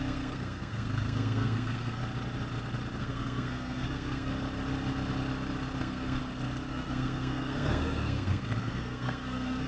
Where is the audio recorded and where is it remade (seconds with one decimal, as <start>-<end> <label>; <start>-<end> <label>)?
0.0-2.0 remade; 2.0-3.0 recorded; 3.0-4.3 remade; 4.3-5.8 recorded; 5.8-6.2 remade; 6.2-6.7 recorded; 6.7-9.7 remade